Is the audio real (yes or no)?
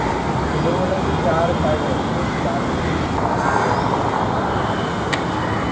yes